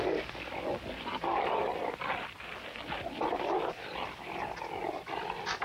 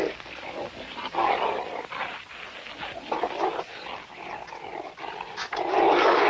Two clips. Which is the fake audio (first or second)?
first